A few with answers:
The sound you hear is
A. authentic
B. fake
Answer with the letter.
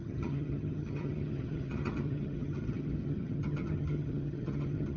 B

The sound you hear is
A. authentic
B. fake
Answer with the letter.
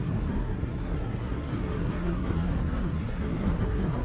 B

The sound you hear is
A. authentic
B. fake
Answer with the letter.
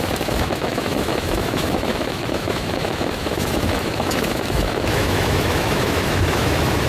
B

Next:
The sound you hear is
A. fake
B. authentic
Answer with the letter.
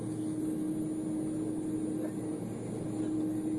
B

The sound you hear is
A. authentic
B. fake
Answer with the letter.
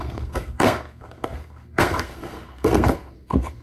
B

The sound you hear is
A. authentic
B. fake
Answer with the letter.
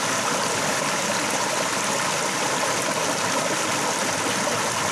A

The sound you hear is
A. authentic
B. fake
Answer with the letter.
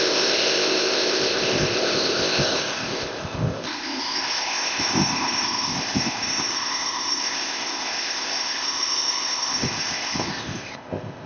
B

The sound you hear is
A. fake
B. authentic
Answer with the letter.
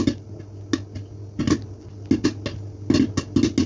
B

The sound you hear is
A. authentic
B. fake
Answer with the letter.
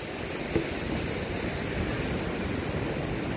A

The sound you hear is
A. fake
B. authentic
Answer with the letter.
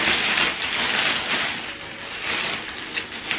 B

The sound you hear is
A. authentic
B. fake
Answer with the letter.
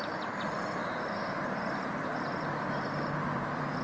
B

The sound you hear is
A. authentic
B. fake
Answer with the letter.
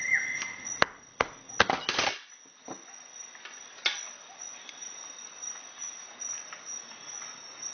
A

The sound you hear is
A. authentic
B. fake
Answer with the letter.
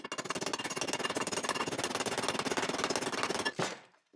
A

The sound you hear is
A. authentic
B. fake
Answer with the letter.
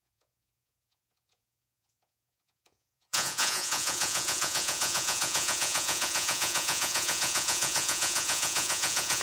B